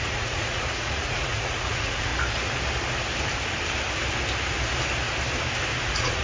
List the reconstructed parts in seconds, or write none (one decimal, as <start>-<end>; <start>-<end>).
0.0-2.1; 5.8-6.2